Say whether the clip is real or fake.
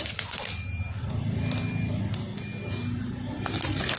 real